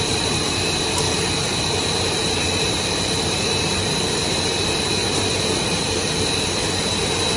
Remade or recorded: remade